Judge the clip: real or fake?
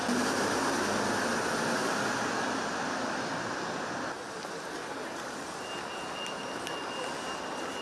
real